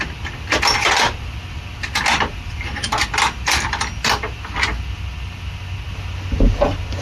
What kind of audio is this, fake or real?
real